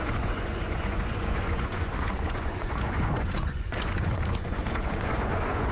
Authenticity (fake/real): fake